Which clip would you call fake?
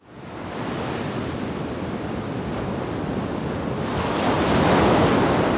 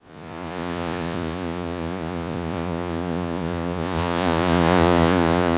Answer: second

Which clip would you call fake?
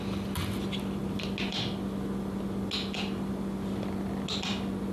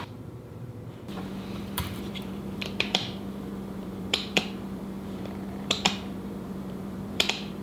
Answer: second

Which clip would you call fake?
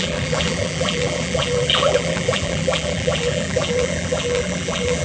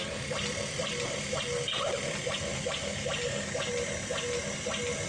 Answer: first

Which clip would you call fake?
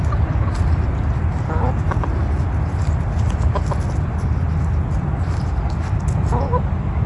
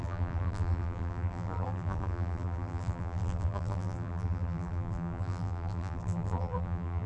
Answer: second